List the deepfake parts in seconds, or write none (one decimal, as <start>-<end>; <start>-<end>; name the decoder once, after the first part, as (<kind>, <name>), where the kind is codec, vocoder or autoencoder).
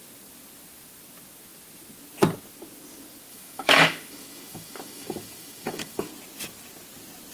3.3-6.1 (autoencoder, DAC-VAE)